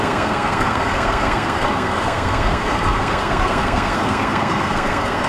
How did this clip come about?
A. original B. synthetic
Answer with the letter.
B